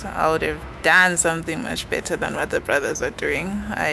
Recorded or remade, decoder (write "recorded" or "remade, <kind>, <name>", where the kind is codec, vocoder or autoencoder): remade, autoencoder, DAC-VAE